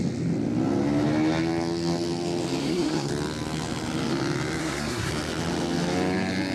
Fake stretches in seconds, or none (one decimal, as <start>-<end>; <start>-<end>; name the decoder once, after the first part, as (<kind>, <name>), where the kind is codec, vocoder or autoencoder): 2.6-3.1 (codec, SNAC); 4.6-5.1